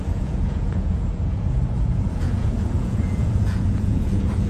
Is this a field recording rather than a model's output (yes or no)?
no